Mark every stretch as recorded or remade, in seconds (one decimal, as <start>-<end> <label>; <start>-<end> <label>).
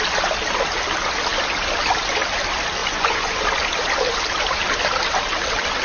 0.0-2.8 recorded; 2.8-3.4 remade; 3.4-5.8 recorded